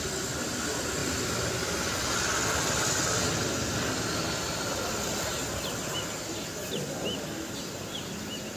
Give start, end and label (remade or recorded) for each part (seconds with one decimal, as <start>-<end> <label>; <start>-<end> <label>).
0.0-8.6 recorded